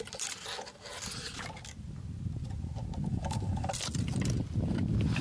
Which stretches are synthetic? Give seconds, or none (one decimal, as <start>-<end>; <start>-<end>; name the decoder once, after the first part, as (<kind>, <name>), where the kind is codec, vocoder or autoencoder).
3.1-3.7 (codec, DAC)